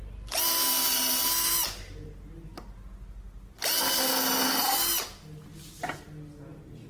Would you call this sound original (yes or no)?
yes